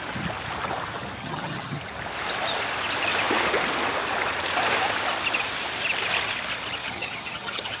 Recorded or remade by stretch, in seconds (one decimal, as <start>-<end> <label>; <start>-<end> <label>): 0.0-1.2 recorded; 1.2-1.8 remade; 1.8-6.8 recorded; 6.8-7.8 remade